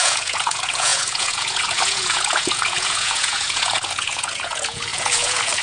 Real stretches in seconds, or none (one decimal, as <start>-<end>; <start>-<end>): none